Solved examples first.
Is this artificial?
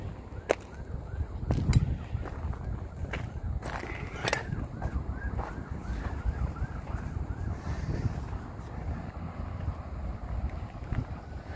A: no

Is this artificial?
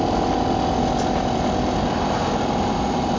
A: no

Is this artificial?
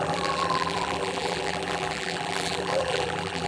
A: yes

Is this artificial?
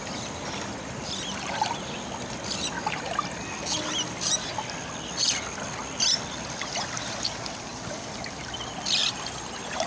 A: no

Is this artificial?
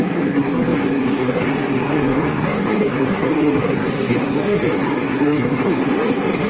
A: yes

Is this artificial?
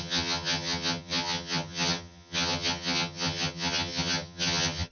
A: yes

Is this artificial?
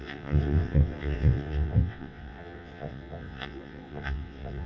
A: yes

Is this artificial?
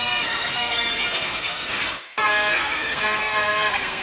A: yes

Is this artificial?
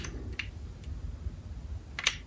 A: no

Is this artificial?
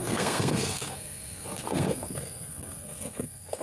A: yes